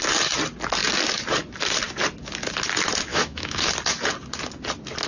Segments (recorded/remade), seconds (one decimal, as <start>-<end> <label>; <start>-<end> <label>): 0.0-3.1 recorded; 3.1-3.7 remade; 3.7-5.1 recorded